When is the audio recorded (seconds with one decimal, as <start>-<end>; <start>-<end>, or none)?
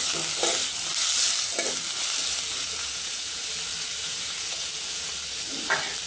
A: 0.0-2.5; 3.4-4.0; 5.1-6.1